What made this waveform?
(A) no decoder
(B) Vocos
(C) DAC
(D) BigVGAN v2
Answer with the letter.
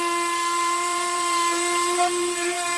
D